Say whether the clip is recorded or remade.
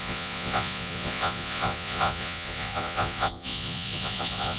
remade